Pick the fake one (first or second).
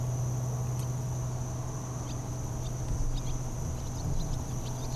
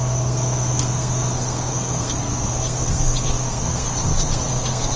second